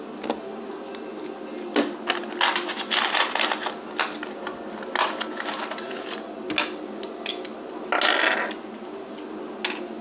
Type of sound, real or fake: real